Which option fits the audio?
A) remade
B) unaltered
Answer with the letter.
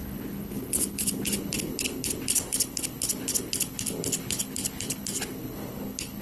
A